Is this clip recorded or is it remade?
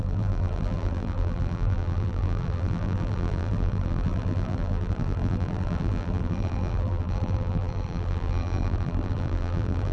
remade